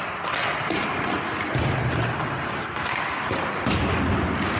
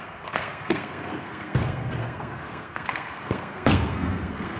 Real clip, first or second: first